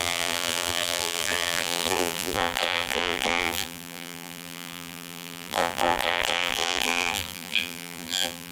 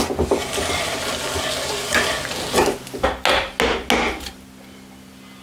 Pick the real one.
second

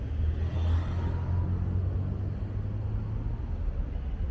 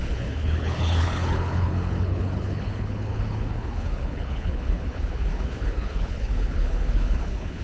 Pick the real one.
first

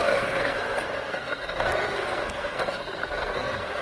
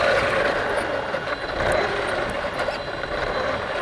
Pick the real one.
second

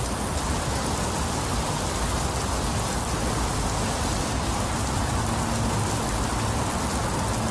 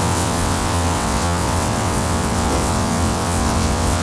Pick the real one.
first